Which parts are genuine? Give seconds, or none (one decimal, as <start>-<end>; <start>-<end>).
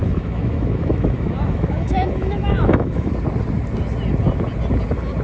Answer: 3.1-5.2